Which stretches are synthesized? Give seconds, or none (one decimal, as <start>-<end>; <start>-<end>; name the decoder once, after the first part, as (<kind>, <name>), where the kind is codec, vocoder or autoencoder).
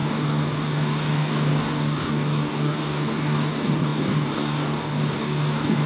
0.0-5.9 (codec, DAC)